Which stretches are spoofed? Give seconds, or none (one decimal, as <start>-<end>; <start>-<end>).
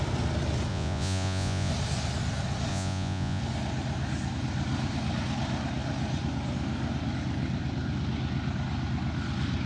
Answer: 0.7-1.7; 2.7-3.4